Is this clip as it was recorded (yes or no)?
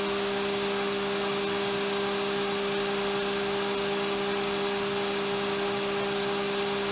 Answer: yes